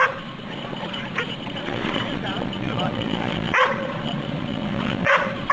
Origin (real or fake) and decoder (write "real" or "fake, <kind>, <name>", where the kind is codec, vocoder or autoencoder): fake, vocoder, Vocos